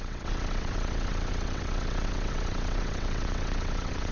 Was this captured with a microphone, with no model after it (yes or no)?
no